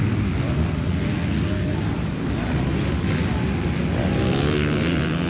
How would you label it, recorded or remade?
recorded